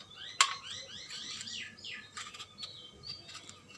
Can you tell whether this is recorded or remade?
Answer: recorded